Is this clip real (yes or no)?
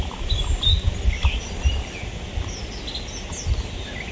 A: yes